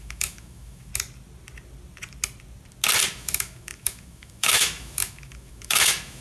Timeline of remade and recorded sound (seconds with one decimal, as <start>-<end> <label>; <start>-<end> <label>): 0.0-0.9 remade; 0.9-3.1 recorded; 3.1-6.2 remade